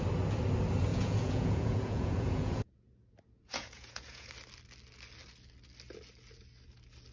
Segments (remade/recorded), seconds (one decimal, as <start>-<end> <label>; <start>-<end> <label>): 0.0-0.9 recorded; 0.9-4.3 remade; 4.3-7.1 recorded